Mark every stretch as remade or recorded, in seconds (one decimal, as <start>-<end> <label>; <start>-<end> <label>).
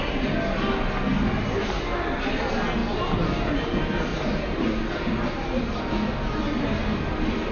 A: 0.0-7.5 recorded